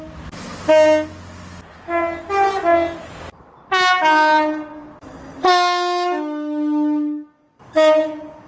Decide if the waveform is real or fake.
real